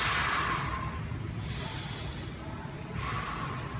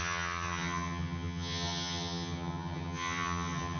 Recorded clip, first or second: first